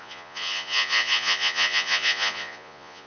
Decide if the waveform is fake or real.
fake